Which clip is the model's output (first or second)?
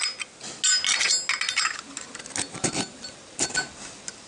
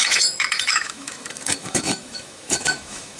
second